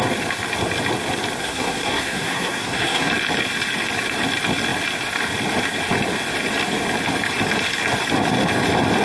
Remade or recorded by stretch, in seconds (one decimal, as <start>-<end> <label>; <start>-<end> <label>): 0.0-1.4 recorded; 1.4-3.1 remade; 3.1-9.0 recorded